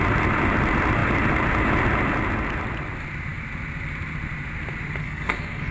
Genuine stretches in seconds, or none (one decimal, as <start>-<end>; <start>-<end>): 0.0-5.0

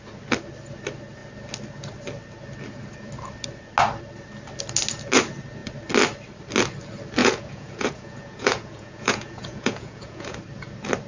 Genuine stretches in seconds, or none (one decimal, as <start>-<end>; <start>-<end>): 0.0-7.2; 10.4-11.1

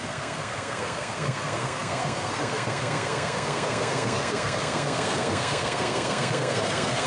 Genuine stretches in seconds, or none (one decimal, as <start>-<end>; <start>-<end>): none

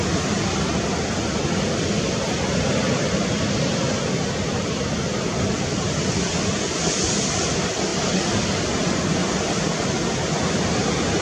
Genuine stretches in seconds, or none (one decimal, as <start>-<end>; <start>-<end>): 0.0-9.2; 10.7-11.2

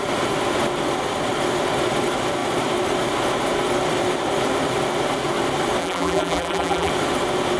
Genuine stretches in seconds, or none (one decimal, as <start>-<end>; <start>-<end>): 0.0-5.8; 6.9-7.6

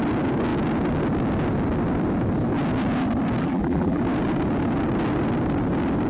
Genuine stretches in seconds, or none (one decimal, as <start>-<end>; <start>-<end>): 0.0-3.4; 4.0-6.1

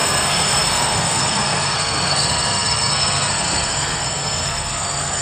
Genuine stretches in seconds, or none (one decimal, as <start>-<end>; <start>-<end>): none

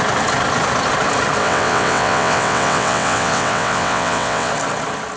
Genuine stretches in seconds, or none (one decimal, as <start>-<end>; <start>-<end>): 0.0-1.4; 4.5-5.2